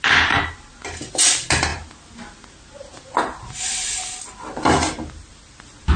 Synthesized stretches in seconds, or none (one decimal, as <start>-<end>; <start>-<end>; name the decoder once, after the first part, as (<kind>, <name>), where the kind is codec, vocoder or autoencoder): none